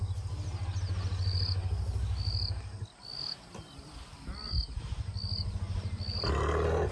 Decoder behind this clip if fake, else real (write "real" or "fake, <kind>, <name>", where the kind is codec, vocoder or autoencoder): real